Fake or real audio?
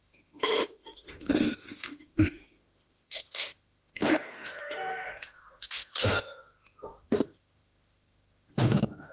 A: fake